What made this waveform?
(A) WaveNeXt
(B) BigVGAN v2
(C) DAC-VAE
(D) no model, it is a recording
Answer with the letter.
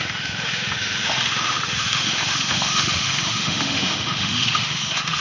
C